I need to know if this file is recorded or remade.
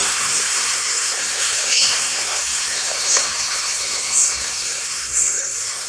remade